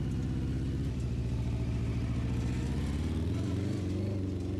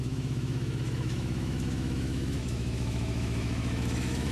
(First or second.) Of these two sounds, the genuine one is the first